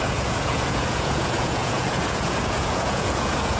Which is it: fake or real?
fake